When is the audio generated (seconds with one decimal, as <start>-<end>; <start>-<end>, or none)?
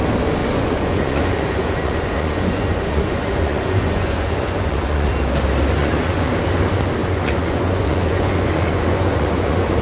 0.4-5.1; 5.8-6.3; 7.0-9.8